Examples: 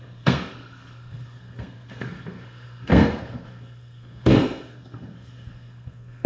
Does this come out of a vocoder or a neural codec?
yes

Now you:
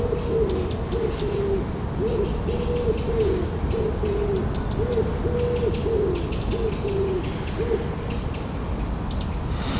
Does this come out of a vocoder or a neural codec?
no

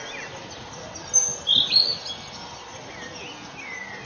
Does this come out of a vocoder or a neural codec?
no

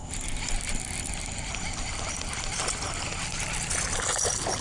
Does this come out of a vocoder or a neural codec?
no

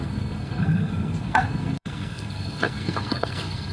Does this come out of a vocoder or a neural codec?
yes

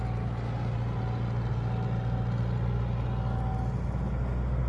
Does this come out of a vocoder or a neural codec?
no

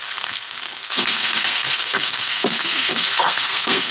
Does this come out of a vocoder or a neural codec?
yes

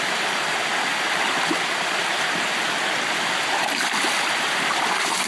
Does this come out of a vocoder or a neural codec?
no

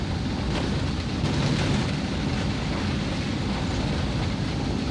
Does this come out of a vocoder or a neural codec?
no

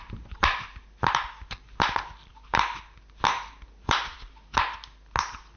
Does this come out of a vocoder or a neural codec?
no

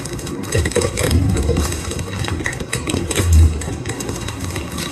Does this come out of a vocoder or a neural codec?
yes